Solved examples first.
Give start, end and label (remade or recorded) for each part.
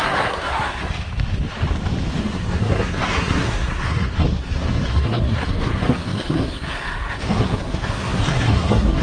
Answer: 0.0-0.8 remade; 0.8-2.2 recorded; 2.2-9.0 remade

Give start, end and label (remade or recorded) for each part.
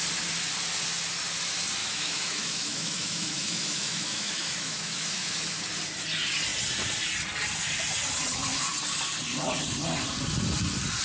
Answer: 0.0-1.8 recorded; 1.8-5.6 remade; 5.6-11.0 recorded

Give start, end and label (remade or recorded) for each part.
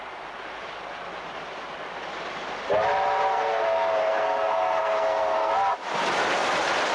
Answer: 0.0-3.3 recorded; 3.3-5.5 remade; 5.5-6.9 recorded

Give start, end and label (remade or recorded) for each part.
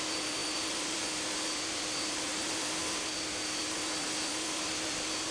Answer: 0.0-0.4 recorded; 0.4-1.0 remade; 1.0-5.3 recorded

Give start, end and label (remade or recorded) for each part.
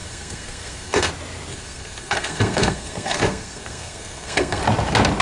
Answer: 0.0-1.1 remade; 1.1-1.5 recorded; 1.5-4.6 remade; 4.6-5.2 recorded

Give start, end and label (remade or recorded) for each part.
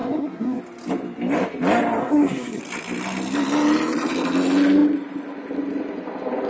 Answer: 0.0-0.6 remade; 0.6-2.0 recorded; 2.0-2.6 remade; 2.6-6.5 recorded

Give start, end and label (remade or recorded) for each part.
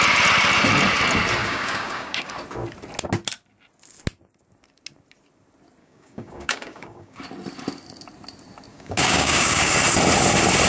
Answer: 0.0-1.4 recorded; 1.4-2.3 remade; 2.3-5.8 recorded; 5.8-7.2 remade; 7.2-8.7 recorded; 8.7-9.7 remade; 9.7-10.7 recorded